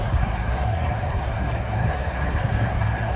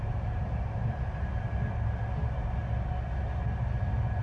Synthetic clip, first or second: first